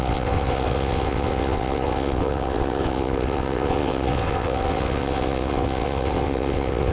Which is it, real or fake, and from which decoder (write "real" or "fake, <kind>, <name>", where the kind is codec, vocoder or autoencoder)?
fake, vocoder, WaveNeXt